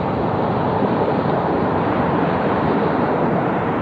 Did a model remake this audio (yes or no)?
yes